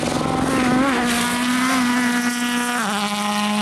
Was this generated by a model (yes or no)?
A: no